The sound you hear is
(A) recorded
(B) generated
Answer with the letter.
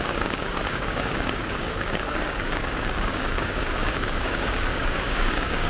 B